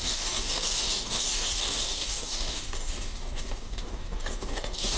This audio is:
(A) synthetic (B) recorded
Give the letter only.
A